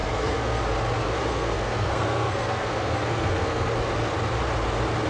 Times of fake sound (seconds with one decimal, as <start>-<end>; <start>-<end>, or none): 0.0-0.6; 1.0-3.7